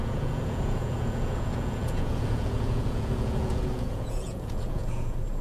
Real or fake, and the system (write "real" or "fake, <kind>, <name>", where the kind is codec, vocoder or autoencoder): fake, vocoder, Vocos